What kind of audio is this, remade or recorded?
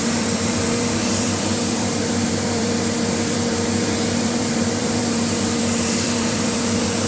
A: remade